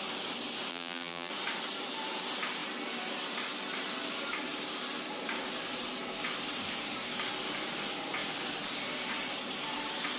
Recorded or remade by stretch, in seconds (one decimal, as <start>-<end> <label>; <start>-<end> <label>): 0.0-0.7 recorded; 0.7-1.3 remade; 1.3-10.2 recorded